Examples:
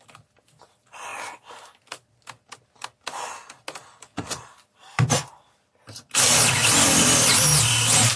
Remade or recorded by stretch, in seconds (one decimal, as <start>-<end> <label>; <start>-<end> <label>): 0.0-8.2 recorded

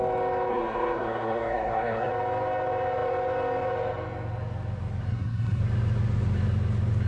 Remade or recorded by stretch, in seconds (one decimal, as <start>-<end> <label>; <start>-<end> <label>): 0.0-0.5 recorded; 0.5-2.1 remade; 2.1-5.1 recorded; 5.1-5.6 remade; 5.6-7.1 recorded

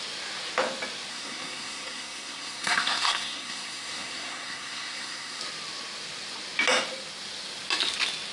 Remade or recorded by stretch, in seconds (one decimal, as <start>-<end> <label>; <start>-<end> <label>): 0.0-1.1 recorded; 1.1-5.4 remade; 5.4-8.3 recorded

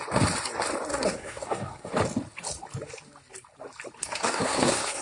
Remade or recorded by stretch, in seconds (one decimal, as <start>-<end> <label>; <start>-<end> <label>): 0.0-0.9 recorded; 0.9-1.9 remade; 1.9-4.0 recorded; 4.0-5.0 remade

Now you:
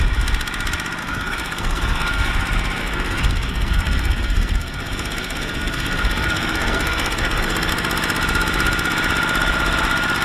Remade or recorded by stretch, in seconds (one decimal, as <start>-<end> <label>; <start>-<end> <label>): 0.0-1.0 recorded; 1.0-2.3 remade; 2.3-2.8 recorded; 2.8-7.7 remade; 7.7-10.2 recorded

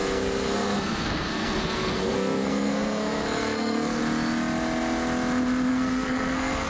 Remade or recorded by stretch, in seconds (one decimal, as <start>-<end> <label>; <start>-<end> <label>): 0.0-4.0 remade; 4.0-5.7 recorded; 5.7-6.7 remade

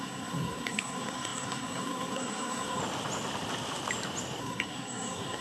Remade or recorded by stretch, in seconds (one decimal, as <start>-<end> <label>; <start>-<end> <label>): 0.0-2.8 remade; 2.8-4.4 recorded; 4.4-5.4 remade

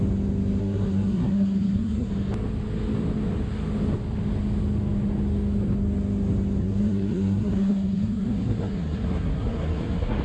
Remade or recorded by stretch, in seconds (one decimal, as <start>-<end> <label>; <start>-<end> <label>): 0.0-0.6 recorded; 0.6-2.1 remade; 2.1-6.6 recorded; 6.6-10.2 remade